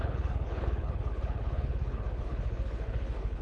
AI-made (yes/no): yes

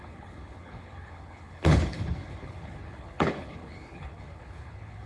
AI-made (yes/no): yes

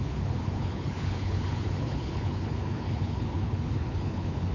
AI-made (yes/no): yes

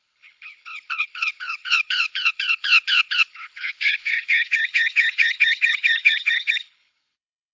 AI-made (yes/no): yes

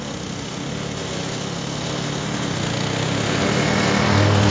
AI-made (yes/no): no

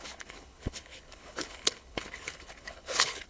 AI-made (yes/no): yes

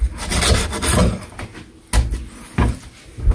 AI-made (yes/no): no